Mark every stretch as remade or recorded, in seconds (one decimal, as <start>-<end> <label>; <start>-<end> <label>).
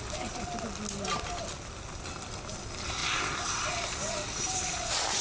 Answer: 0.0-5.2 recorded